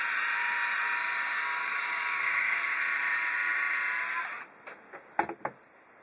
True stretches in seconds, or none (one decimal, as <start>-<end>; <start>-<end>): 0.0-1.6; 2.8-6.0